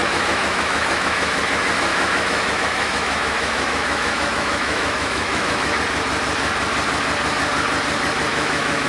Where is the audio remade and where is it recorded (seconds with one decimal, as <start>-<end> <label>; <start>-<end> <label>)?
0.0-1.4 remade; 1.4-1.9 recorded; 1.9-5.8 remade; 5.8-8.3 recorded; 8.3-8.9 remade